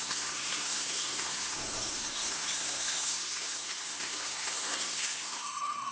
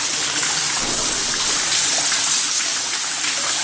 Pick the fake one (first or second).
first